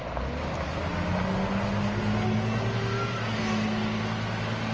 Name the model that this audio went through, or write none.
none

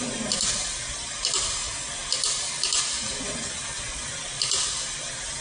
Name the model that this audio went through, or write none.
none